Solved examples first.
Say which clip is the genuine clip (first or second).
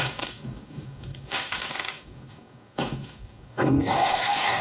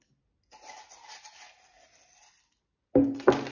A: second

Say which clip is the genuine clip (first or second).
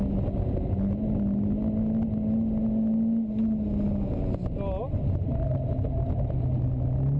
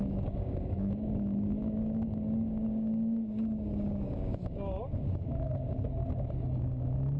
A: first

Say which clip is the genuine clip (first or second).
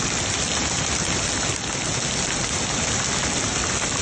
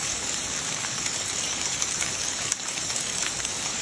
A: first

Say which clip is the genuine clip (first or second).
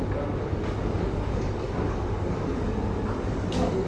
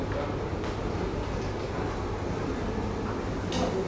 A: second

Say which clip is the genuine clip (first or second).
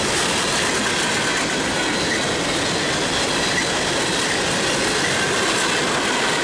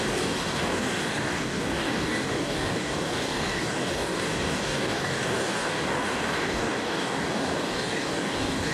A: first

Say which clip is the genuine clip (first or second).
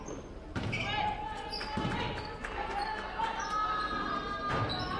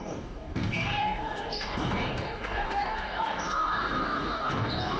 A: first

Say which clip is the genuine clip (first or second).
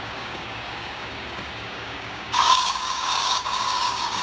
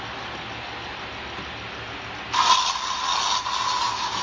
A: second